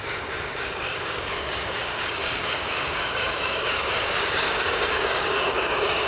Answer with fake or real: fake